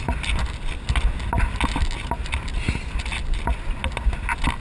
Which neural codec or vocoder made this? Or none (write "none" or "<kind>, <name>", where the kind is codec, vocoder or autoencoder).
none